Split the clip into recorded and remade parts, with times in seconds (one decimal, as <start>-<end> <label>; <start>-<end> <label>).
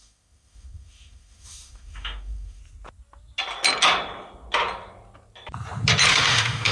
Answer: 0.0-2.6 remade; 2.6-6.1 recorded; 6.1-6.7 remade